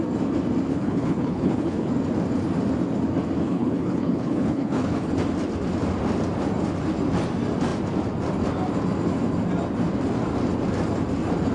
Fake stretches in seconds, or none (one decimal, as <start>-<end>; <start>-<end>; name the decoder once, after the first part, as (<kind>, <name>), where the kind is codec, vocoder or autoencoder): 0.7-1.9 (codec, HILCodec); 3.4-5.1